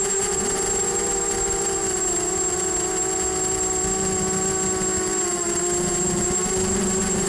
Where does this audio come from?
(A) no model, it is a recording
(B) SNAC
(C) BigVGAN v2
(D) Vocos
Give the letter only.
A